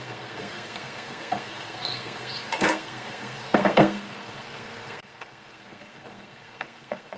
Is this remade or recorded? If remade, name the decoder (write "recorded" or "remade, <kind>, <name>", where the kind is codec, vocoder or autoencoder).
remade, codec, SNAC